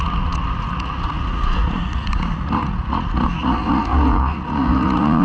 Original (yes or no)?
no